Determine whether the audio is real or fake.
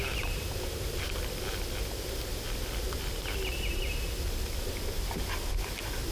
real